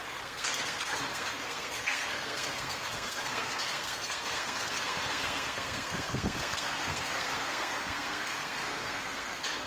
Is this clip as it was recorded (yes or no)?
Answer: no